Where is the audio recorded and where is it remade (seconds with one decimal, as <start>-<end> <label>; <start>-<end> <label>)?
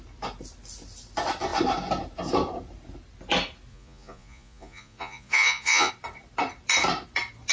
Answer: 0.0-3.7 recorded; 3.7-5.9 remade; 5.9-7.5 recorded